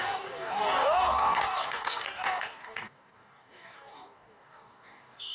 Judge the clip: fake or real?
fake